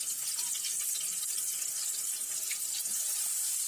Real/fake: real